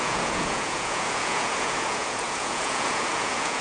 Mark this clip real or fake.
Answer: fake